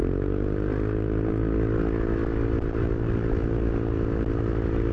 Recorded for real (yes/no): yes